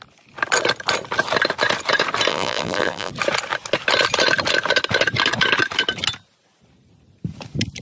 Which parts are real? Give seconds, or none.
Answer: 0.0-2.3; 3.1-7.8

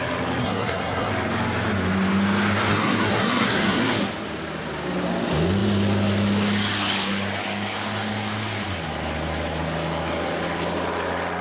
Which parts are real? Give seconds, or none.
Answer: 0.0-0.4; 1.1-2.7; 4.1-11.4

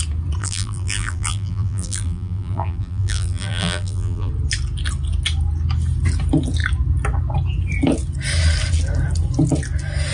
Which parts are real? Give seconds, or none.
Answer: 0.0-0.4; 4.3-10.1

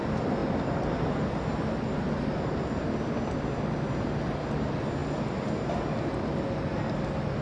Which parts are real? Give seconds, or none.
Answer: 0.0-0.4; 0.9-5.0; 5.5-7.4

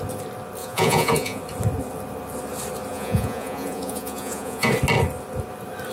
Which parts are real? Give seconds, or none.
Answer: 0.0-0.6; 1.4-2.9; 4.7-5.9

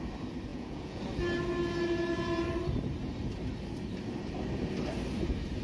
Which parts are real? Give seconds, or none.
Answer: 0.0-0.5; 1.0-5.6

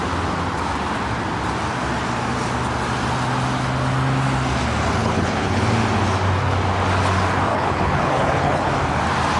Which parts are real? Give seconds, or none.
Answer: 0.0-5.0; 5.6-7.5; 8.7-9.4

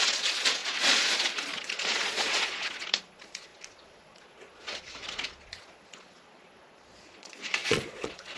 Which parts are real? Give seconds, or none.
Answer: none